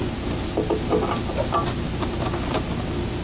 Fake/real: real